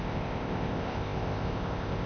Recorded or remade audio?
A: remade